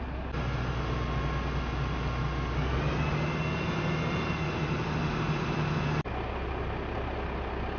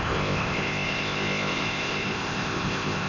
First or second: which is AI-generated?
second